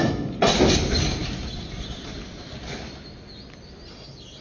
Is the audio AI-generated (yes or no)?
no